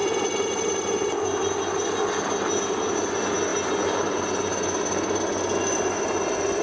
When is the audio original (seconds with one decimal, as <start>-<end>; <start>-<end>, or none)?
0.0-6.6